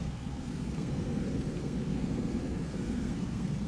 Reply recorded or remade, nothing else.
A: remade